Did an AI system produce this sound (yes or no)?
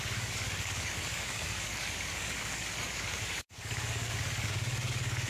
yes